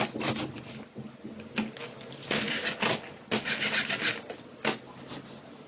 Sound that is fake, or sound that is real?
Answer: real